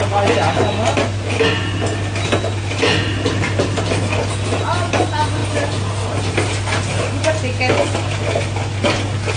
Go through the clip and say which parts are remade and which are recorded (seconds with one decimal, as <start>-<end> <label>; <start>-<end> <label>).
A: 0.0-9.4 recorded